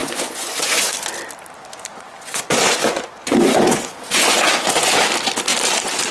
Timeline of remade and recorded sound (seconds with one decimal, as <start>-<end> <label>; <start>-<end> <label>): 0.0-0.9 remade; 0.9-1.9 recorded; 1.9-5.0 remade; 5.0-6.1 recorded